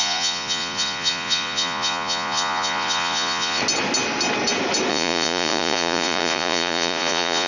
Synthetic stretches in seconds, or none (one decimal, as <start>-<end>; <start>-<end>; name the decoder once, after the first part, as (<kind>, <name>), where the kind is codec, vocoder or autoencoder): 0.0-3.6 (vocoder, Vocos); 4.9-7.5